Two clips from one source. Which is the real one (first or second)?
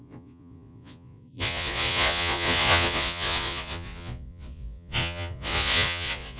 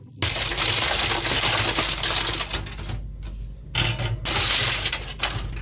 second